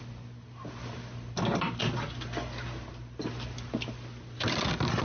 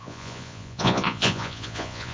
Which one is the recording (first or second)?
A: first